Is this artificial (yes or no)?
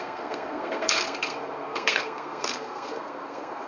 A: yes